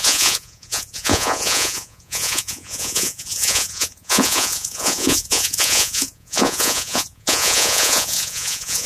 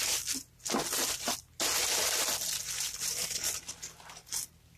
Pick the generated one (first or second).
first